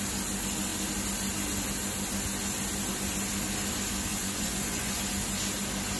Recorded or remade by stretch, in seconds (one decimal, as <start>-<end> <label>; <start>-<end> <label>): 0.0-4.1 recorded; 4.1-5.0 remade; 5.0-6.0 recorded